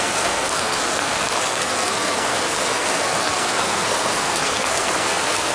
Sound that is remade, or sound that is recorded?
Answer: remade